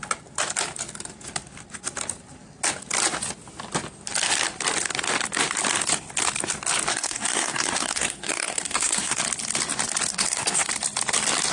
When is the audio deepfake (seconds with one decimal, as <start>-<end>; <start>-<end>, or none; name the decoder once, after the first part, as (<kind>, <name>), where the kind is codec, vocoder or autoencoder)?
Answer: 6.9-9.2 (codec, SNAC); 10.1-10.7